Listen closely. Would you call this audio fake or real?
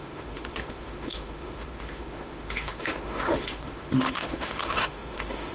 fake